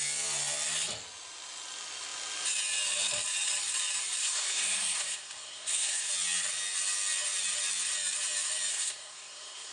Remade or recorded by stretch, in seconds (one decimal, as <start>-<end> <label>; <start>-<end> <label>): 0.0-4.2 recorded; 4.2-6.1 remade; 6.1-8.7 recorded; 8.7-9.7 remade